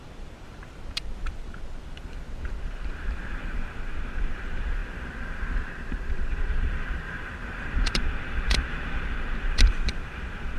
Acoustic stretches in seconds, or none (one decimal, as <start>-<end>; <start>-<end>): none